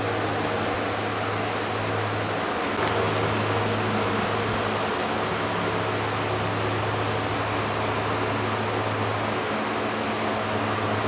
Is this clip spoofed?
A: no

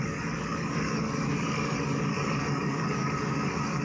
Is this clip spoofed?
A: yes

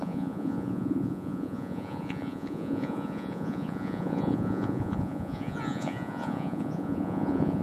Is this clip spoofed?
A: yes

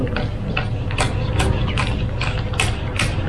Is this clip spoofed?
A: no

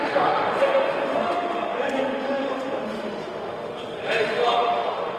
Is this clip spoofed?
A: yes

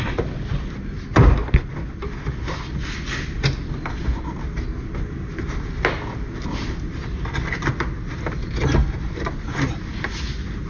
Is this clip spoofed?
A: no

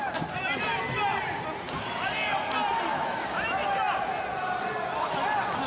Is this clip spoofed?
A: no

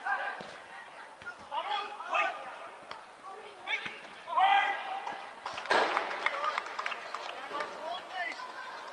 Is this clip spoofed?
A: yes